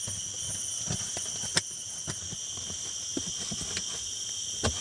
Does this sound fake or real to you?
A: real